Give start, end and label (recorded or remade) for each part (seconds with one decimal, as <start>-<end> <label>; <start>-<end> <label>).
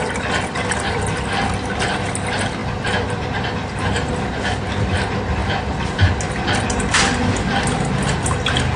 0.0-8.8 recorded